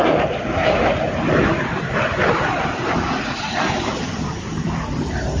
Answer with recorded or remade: recorded